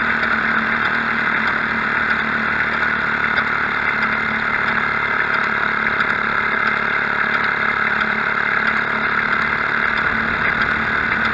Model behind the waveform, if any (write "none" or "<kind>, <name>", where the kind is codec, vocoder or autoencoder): none